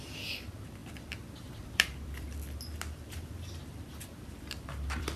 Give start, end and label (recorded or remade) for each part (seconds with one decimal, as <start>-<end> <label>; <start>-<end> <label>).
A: 0.0-5.2 remade

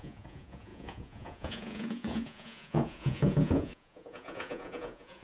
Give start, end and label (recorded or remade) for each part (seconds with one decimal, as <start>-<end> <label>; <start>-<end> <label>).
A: 0.0-5.2 remade

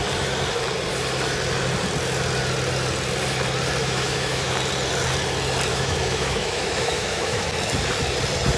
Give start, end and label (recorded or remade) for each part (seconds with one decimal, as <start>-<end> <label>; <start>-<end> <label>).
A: 0.0-3.8 recorded; 3.8-4.5 remade; 4.5-5.7 recorded; 5.7-7.5 remade; 7.5-8.6 recorded

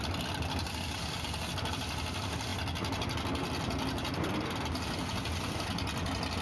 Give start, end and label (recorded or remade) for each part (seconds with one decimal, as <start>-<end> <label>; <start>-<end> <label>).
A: 0.0-6.4 recorded